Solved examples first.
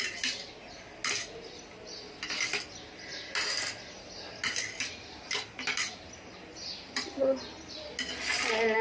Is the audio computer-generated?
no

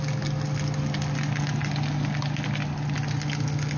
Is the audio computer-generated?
no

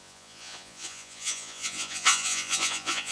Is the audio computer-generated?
yes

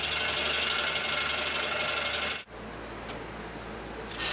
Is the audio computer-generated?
no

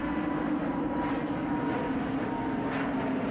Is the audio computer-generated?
no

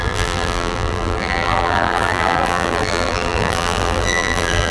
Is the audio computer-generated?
yes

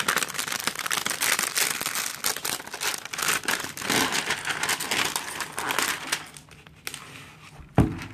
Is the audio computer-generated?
no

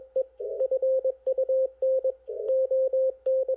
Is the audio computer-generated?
no